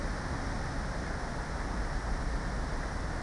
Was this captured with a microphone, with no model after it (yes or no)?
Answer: yes